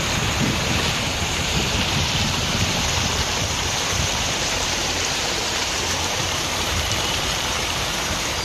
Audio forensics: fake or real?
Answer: fake